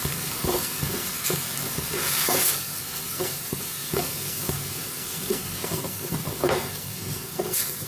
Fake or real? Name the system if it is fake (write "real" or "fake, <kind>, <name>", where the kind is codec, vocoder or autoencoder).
fake, codec, SNAC